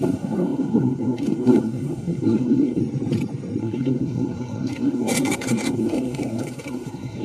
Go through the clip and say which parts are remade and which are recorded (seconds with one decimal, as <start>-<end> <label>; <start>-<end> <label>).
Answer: 0.0-2.8 remade; 2.8-3.6 recorded; 3.6-7.2 remade